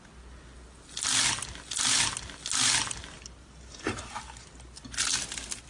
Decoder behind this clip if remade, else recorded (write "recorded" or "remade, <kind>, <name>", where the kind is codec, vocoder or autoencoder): recorded